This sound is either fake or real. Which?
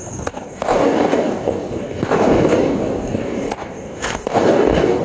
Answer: fake